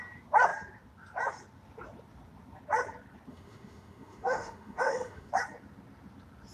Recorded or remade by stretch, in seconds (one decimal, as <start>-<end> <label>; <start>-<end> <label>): 0.0-3.3 recorded; 3.3-5.3 remade; 5.3-6.5 recorded